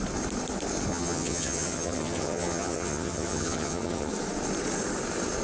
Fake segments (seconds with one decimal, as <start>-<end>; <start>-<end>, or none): 0.9-4.1